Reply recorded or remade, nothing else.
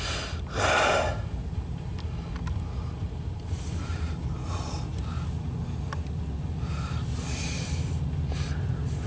recorded